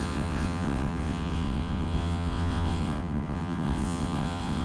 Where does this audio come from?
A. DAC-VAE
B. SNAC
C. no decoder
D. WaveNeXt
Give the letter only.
D